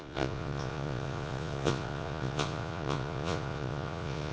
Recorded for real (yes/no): no